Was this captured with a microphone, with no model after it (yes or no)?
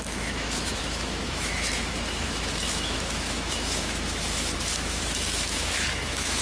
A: no